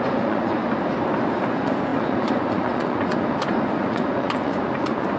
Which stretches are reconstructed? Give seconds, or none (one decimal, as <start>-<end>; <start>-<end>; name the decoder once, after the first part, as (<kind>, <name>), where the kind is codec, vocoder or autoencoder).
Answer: 0.0-0.6 (vocoder, Vocos); 1.5-5.2